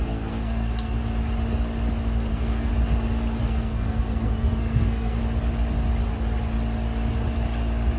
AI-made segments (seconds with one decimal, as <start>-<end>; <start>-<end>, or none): 0.0-1.0; 2.3-2.7; 3.4-5.2